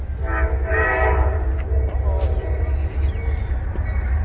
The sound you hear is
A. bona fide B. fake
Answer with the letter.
A